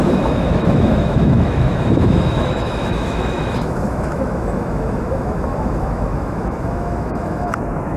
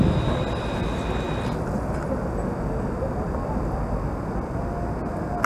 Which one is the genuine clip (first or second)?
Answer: second